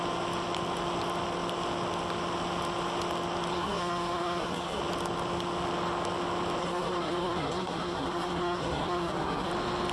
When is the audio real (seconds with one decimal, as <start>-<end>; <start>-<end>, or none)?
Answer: 0.0-3.5; 4.8-6.6; 9.5-9.9